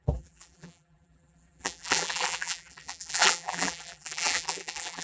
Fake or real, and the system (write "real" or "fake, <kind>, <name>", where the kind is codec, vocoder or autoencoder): fake, vocoder, BigVGAN v2